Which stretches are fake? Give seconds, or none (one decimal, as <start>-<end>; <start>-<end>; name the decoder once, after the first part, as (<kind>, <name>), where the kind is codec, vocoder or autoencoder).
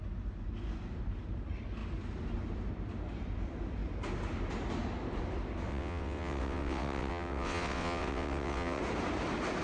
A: 5.7-8.8 (vocoder, WaveNeXt)